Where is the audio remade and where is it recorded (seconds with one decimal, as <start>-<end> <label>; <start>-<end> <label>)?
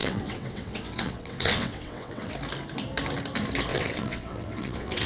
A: 0.0-2.3 remade; 2.3-3.7 recorded; 3.7-5.1 remade